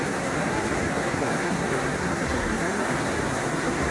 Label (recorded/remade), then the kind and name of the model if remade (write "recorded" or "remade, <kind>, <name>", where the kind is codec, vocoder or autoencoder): remade, codec, SNAC